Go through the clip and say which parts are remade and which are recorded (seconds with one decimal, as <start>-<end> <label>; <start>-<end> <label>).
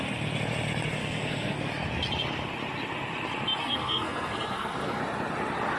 0.0-1.0 recorded; 1.0-1.7 remade; 1.7-3.6 recorded; 3.6-5.0 remade; 5.0-5.8 recorded